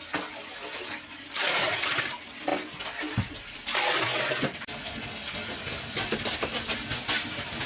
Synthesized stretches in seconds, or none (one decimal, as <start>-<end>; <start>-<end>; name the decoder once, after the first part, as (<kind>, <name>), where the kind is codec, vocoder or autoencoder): none

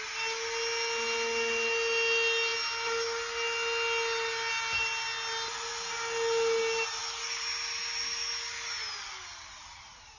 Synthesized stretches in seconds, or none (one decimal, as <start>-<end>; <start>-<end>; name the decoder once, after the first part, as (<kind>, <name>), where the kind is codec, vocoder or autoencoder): none

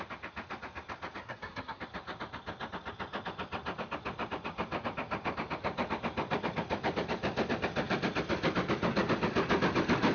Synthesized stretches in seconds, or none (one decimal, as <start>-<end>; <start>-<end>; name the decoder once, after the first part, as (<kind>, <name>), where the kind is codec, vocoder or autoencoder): 1.2-1.8 (codec, SNAC)

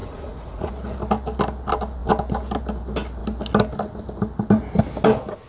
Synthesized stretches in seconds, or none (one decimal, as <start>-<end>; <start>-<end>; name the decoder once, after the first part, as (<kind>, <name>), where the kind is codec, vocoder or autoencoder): 0.0-0.7 (vocoder, Vocos)

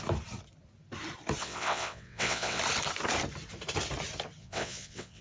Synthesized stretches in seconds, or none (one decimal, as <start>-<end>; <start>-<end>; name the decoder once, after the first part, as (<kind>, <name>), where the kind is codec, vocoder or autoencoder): 1.4-2.6 (vocoder, WaveNeXt); 4.4-5.2

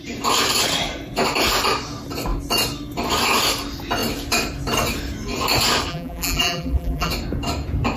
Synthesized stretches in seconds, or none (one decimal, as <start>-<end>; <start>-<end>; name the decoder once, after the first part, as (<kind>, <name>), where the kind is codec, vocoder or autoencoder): 5.9-7.1 (vocoder, BigVGAN v2)